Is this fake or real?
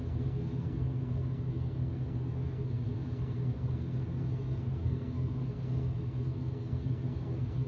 fake